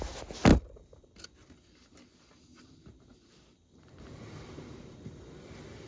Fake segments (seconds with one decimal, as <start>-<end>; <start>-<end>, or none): none